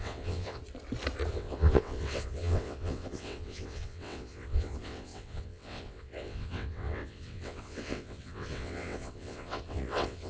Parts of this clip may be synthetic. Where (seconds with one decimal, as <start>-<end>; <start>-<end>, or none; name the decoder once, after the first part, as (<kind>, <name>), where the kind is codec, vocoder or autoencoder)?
0.0-0.6 (vocoder, WaveNeXt); 1.3-10.3